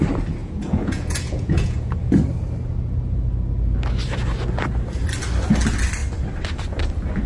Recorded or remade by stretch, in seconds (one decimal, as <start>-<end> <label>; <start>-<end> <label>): 0.0-0.4 recorded; 0.4-2.0 remade; 2.0-7.3 recorded